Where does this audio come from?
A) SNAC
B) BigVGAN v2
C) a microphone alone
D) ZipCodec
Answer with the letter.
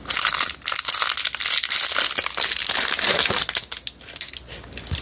C